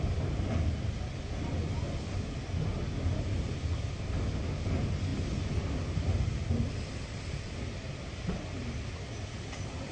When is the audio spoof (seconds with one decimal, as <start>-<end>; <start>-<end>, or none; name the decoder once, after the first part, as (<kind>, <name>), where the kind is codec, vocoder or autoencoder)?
none